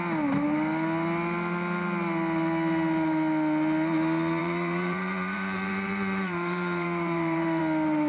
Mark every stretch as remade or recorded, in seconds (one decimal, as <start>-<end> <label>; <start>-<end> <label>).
0.0-4.4 recorded; 4.4-7.6 remade; 7.6-8.1 recorded